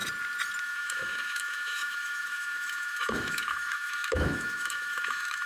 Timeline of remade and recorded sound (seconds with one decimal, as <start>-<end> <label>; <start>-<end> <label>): 0.0-0.6 recorded; 0.6-5.5 remade

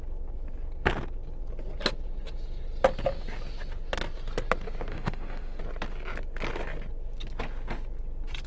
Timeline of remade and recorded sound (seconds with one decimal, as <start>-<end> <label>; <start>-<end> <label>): 0.0-4.9 recorded; 4.9-5.6 remade; 5.6-8.5 recorded

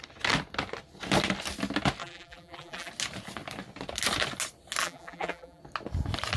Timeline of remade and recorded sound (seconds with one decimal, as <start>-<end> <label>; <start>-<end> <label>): 0.0-2.0 recorded; 2.0-2.9 remade; 2.9-4.8 recorded; 4.8-5.6 remade; 5.6-6.4 recorded